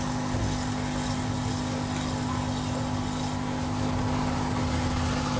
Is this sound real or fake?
real